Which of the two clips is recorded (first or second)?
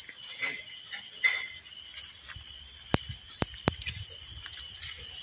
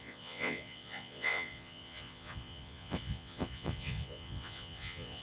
first